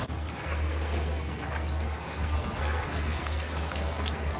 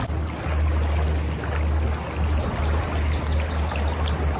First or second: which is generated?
first